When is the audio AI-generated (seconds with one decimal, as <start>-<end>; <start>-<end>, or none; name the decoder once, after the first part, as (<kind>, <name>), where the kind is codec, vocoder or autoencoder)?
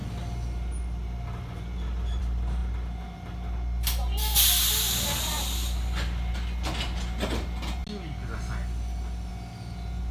none